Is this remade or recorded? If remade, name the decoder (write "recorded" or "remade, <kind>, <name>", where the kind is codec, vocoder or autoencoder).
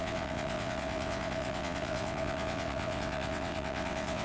remade, vocoder, WaveNeXt